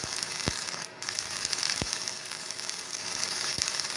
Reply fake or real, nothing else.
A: fake